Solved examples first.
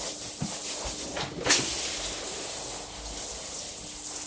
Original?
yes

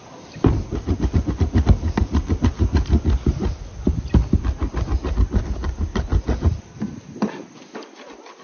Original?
yes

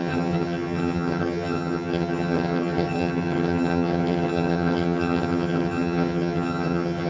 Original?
no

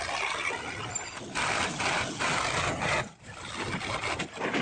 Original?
yes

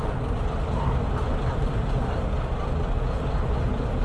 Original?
yes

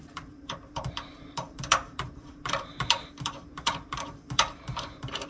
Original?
no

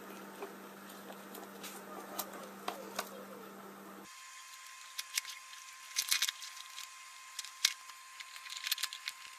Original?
yes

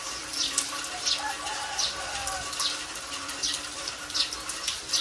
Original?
no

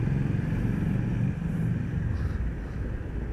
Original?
yes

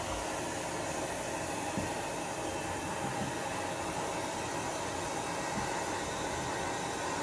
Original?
yes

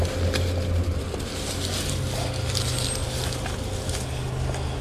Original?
yes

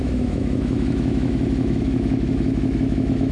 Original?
no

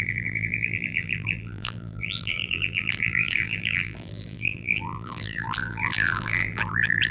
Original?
no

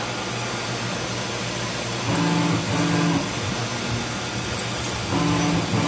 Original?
yes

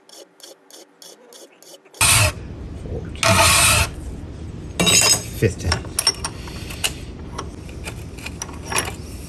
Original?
yes